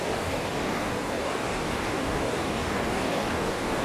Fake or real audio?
fake